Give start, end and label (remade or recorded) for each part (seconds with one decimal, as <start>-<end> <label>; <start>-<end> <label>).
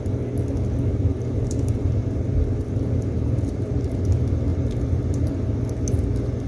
0.0-0.9 recorded; 0.9-4.0 remade; 4.0-4.5 recorded; 4.5-5.5 remade; 5.5-6.5 recorded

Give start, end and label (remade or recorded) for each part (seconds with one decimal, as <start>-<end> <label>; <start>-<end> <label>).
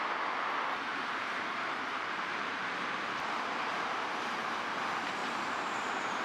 0.0-0.9 recorded; 0.9-4.6 remade; 4.6-5.2 recorded; 5.2-6.2 remade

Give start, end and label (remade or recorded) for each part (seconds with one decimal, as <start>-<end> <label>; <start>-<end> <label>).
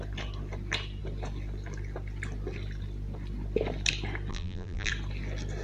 0.0-4.3 recorded; 4.3-4.9 remade; 4.9-5.6 recorded